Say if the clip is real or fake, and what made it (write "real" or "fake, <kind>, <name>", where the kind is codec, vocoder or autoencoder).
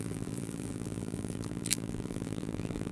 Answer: fake, vocoder, BigVGAN v2